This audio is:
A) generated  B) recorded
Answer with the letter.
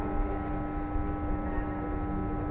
B